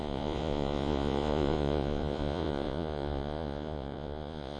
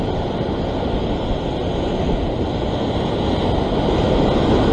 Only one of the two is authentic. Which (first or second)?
second